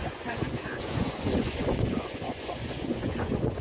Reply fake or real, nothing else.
fake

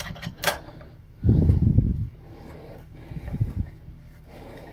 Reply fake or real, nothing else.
fake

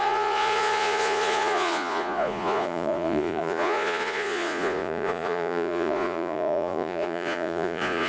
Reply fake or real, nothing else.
fake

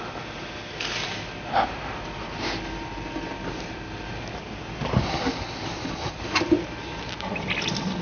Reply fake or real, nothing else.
real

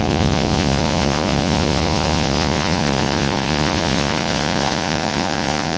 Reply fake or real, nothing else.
fake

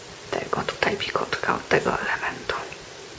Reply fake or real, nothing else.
real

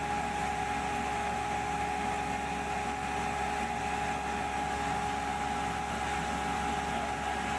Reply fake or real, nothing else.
real